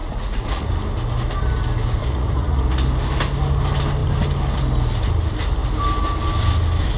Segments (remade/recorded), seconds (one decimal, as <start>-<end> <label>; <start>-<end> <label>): 0.0-0.7 remade; 0.7-2.0 recorded; 2.0-2.6 remade; 2.6-7.0 recorded

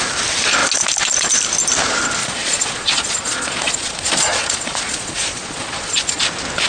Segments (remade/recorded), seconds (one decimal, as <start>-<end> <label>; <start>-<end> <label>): 0.0-2.2 recorded; 2.2-6.2 remade; 6.2-6.7 recorded

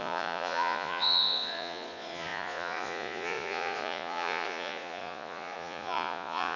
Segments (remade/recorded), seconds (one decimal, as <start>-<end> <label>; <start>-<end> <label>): 0.0-6.6 remade

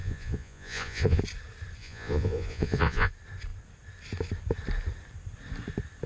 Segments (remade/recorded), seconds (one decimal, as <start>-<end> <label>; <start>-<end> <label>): 0.0-1.2 remade; 1.2-1.8 recorded; 1.8-3.1 remade; 3.1-6.1 recorded

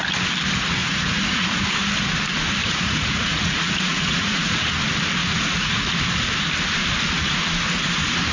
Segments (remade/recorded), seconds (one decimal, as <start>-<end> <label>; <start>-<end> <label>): 0.0-0.8 recorded; 0.8-1.6 remade; 1.6-2.6 recorded; 2.6-4.7 remade; 4.7-5.2 recorded; 5.2-5.9 remade; 5.9-8.3 recorded